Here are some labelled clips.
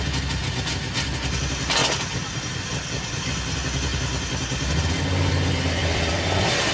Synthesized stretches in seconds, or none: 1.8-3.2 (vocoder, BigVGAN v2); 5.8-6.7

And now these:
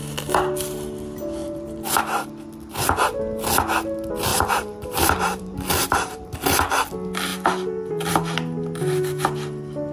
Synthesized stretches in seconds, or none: 1.4-2.3 (vocoder, BigVGAN v2); 4.3-6.3

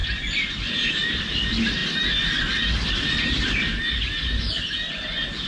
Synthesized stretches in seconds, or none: 0.0-0.9 (vocoder, BigVGAN v2)